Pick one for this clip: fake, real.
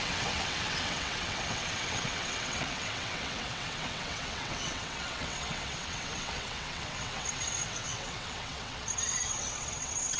fake